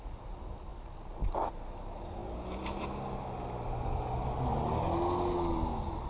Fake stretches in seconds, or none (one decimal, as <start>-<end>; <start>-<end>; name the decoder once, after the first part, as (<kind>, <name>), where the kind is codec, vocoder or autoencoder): none